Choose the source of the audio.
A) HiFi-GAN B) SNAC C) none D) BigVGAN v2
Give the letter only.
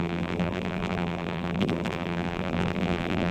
D